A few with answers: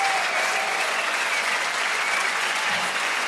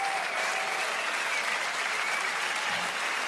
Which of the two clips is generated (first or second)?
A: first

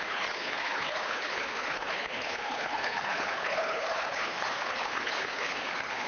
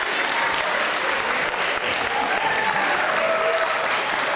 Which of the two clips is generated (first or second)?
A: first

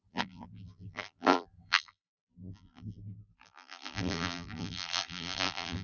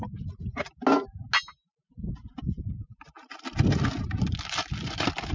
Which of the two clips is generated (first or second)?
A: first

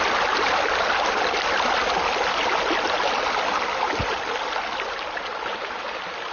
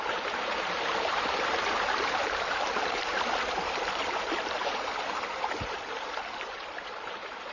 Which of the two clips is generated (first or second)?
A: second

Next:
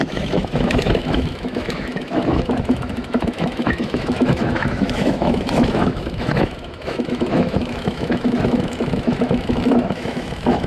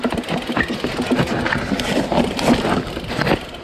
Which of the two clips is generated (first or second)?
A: first